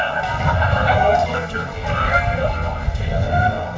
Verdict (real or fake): fake